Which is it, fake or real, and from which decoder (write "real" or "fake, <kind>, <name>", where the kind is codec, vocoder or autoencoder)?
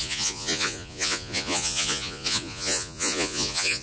fake, vocoder, Vocos